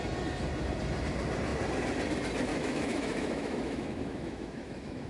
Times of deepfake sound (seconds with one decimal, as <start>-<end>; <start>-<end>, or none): 2.5-5.1